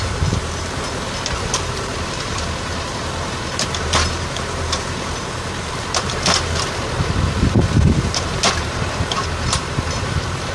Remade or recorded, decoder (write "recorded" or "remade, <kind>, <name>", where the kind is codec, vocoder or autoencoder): remade, vocoder, BigVGAN v2